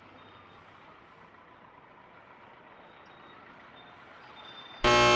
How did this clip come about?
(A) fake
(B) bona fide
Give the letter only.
B